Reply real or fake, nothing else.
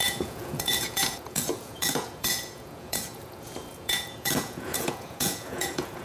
fake